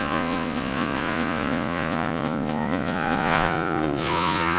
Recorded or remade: remade